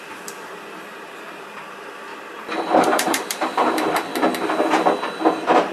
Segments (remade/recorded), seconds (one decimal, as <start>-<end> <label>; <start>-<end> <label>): 0.0-2.1 remade; 2.1-2.8 recorded; 2.8-4.1 remade; 4.1-5.7 recorded